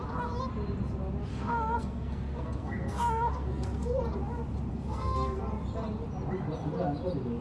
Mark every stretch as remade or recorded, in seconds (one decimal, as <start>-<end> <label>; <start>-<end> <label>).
0.0-1.3 recorded; 1.3-4.0 remade; 4.0-4.7 recorded; 4.7-5.4 remade; 5.4-7.4 recorded